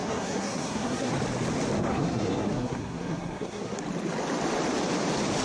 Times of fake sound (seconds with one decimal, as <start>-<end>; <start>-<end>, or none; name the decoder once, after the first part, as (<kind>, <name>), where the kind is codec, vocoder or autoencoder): 0.0-1.1 (codec, SNAC); 1.9-3.8